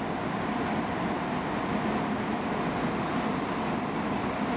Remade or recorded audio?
recorded